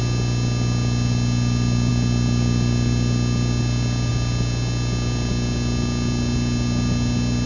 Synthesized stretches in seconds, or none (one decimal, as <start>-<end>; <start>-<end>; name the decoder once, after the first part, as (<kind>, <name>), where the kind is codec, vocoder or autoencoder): none